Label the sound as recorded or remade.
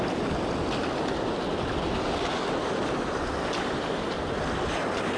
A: recorded